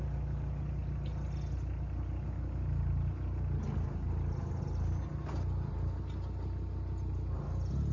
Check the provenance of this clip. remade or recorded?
recorded